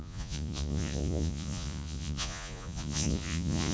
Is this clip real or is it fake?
fake